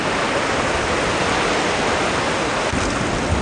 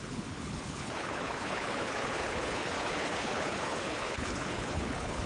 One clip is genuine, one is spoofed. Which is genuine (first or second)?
first